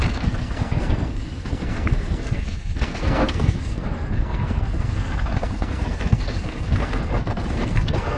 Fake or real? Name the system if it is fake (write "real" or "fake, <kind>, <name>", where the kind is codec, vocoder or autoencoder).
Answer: fake, codec, SNAC